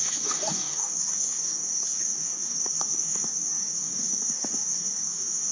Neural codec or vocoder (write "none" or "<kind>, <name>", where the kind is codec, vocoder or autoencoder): codec, DAC